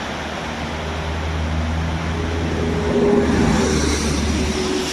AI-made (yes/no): no